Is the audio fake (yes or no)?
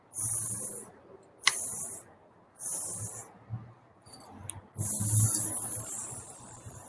no